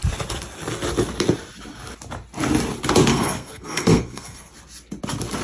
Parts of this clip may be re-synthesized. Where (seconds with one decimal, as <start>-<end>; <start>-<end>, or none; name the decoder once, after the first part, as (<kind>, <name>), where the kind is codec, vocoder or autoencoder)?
3.1-4.5 (codec, SNAC)

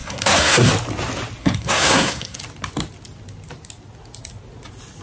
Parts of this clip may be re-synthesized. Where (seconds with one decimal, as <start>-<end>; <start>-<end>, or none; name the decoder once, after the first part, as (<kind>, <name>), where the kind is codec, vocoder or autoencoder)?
0.0-0.7 (codec, SNAC); 1.4-2.4

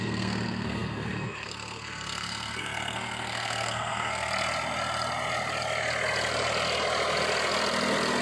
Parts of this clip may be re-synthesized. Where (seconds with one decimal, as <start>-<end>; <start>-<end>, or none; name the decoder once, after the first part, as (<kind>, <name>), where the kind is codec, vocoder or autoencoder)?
0.0-4.3 (codec, SNAC)

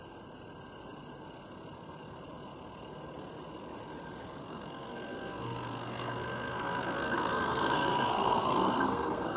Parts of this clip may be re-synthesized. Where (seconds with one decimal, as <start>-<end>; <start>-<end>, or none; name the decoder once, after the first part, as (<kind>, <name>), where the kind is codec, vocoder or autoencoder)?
4.4-9.4 (codec, SNAC)

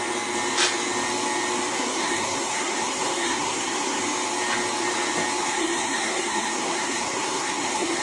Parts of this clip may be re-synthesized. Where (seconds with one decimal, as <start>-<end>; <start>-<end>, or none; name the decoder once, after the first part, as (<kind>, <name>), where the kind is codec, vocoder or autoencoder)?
1.7-4.0 (codec, SNAC); 5.4-8.0